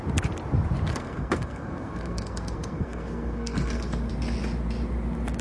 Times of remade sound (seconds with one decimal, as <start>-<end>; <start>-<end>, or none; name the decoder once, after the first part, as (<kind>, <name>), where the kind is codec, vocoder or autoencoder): 0.9-4.1 (codec, SNAC)

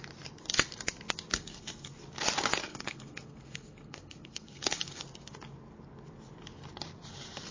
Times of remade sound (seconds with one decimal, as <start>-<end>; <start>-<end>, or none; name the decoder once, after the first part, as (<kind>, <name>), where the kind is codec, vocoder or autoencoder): 1.3-2.0 (codec, SNAC); 2.7-5.0